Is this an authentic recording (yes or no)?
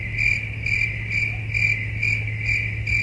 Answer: yes